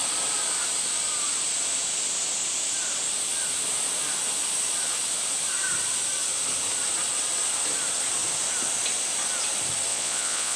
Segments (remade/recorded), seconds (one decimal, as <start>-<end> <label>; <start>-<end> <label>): 0.0-9.9 recorded; 9.9-10.6 remade